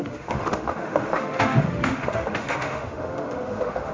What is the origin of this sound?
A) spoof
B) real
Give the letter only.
A